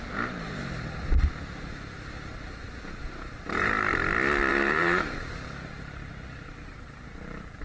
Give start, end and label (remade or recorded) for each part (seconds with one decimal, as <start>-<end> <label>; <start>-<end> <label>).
0.0-3.9 remade; 3.9-4.5 recorded; 4.5-7.6 remade